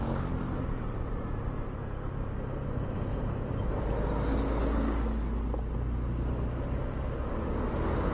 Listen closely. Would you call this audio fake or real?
real